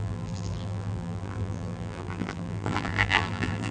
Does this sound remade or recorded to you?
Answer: remade